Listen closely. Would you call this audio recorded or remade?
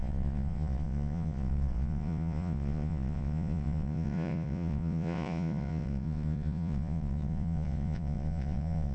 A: remade